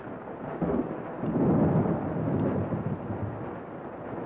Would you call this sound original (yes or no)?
yes